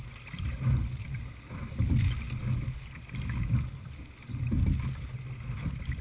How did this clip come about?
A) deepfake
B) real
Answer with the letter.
B